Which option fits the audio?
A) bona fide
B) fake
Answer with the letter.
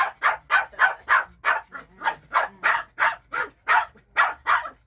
A